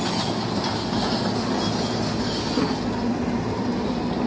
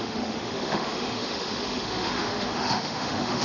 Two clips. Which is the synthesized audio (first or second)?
second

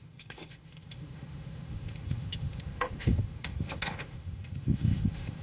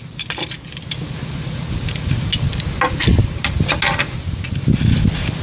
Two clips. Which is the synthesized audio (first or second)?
first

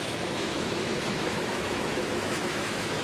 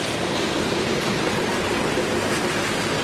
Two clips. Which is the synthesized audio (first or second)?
first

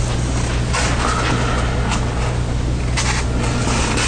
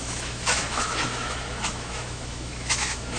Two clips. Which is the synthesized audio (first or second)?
second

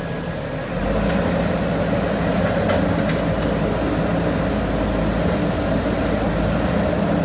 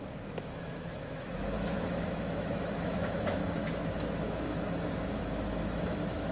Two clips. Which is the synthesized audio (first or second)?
second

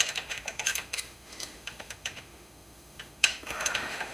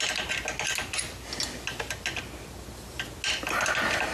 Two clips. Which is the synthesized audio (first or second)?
first